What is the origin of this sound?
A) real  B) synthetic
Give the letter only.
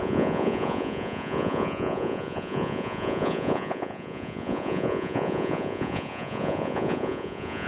B